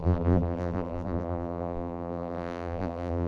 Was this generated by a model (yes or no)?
yes